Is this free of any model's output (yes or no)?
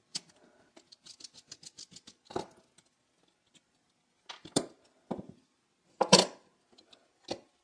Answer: yes